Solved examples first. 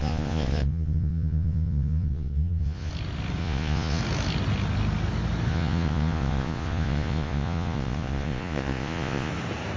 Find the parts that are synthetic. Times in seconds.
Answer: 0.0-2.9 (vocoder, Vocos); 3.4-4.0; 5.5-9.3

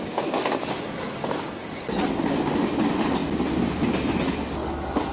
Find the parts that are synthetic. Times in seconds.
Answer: none